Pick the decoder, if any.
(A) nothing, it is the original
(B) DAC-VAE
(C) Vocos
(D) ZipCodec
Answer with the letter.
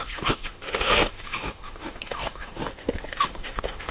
B